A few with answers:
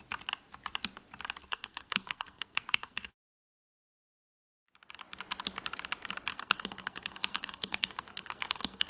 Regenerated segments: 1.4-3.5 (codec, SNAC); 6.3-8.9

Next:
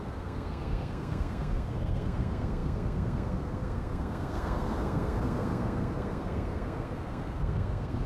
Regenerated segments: 0.0-8.1 (codec, SNAC)